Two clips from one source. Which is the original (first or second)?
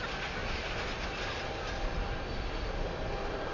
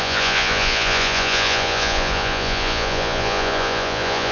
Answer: first